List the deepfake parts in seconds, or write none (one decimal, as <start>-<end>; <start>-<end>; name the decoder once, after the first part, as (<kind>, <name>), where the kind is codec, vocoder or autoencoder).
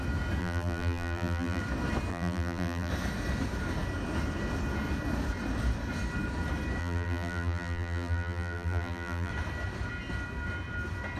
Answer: 0.4-1.6 (vocoder, BigVGAN v2); 2.1-2.9; 6.8-9.3